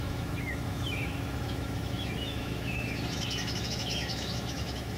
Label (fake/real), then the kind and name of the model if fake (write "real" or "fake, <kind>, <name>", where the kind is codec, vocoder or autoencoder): fake, autoencoder, DAC-VAE